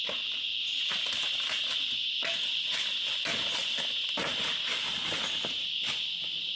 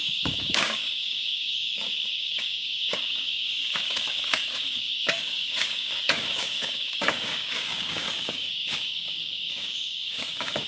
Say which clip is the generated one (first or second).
second